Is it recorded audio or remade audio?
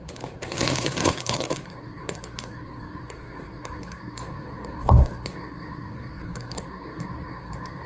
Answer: remade